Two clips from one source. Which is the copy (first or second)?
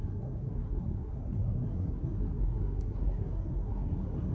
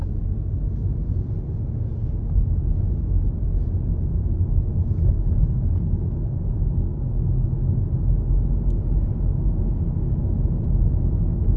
first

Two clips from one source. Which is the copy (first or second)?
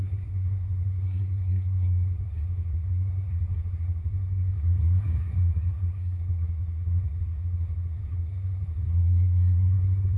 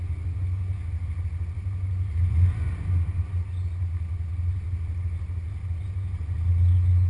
first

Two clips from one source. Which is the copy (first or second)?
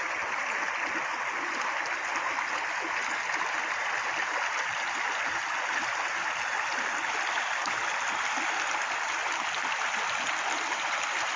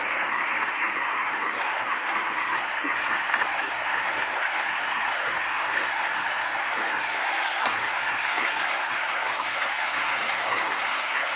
second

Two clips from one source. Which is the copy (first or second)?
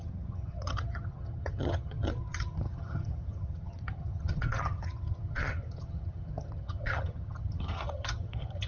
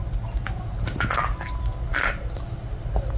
first